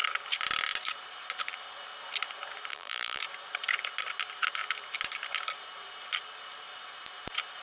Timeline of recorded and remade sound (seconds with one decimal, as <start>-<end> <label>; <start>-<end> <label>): 0.0-2.7 recorded; 2.7-3.2 remade; 3.2-7.6 recorded